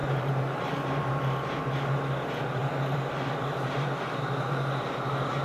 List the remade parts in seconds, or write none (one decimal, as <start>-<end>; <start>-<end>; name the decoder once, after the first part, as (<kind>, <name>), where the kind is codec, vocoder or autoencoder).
0.0-1.6 (vocoder, BigVGAN v2); 2.6-4.0